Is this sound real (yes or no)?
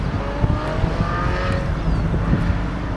yes